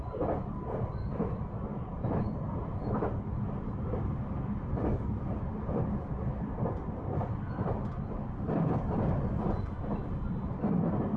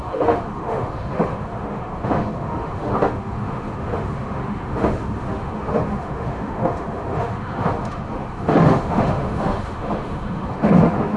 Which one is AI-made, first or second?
second